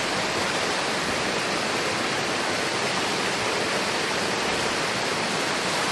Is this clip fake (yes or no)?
no